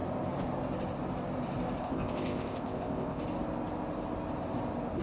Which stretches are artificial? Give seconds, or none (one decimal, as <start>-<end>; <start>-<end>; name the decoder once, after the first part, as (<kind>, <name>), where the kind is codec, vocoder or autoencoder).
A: 1.8-3.2 (codec, ZipCodec)